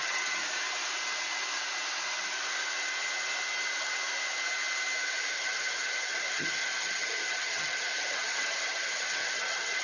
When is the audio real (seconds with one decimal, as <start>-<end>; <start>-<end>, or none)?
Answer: 0.4-5.3